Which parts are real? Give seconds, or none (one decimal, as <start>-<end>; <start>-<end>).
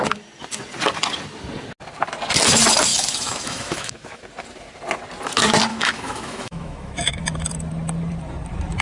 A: 0.0-2.9; 4.2-5.7; 7.2-8.8